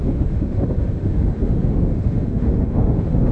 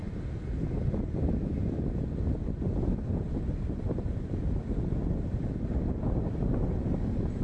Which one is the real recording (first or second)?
second